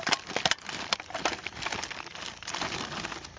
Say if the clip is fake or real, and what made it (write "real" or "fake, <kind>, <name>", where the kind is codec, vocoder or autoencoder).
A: real